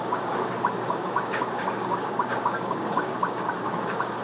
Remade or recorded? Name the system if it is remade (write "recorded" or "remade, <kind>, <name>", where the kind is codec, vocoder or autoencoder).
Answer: remade, codec, DAC